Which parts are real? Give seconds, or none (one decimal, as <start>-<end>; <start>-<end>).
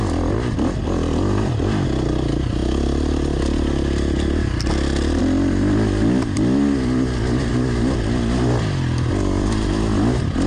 0.0-10.5